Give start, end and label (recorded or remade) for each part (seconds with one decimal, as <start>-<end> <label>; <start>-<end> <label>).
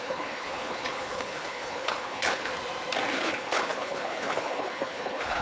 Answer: 0.0-2.5 remade; 2.5-3.1 recorded; 3.1-5.4 remade